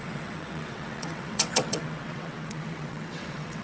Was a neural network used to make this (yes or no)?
yes